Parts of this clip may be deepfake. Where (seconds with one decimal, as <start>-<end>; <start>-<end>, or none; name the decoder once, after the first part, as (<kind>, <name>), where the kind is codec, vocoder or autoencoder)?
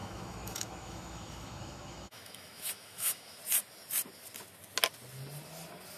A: 0.0-3.4 (autoencoder, DAC-VAE)